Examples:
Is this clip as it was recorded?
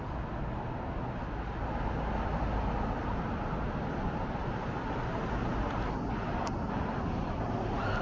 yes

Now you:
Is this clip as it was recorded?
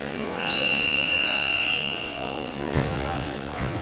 no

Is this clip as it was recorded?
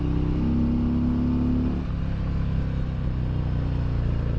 yes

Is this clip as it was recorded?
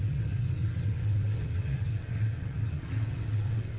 no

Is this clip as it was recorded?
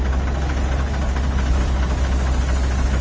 yes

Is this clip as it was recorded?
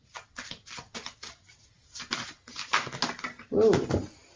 yes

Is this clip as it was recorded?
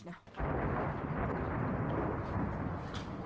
yes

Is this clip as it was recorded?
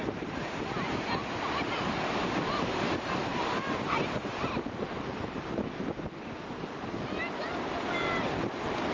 yes